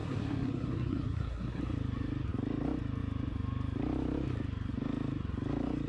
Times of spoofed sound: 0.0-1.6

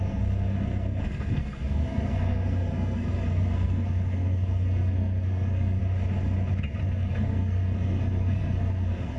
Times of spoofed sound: 0.0-5.8; 6.8-9.2

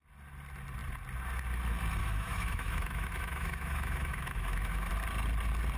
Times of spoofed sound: 2.0-4.9

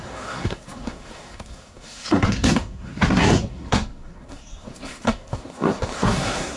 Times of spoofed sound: 0.0-6.6

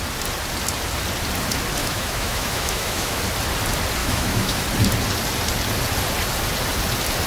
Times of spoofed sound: 1.8-3.2; 4.0-4.6

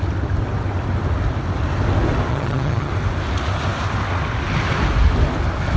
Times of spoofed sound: 2.3-2.9

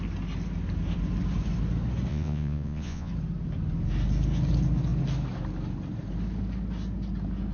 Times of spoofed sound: 2.1-3.1